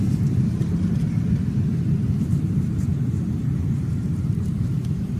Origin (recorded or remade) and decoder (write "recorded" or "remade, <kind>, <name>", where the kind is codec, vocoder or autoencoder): remade, vocoder, BigVGAN v2